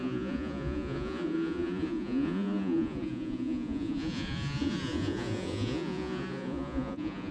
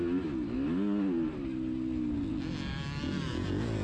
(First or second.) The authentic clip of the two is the second